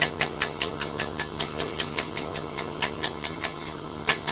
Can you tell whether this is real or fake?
fake